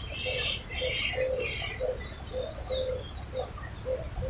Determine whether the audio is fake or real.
real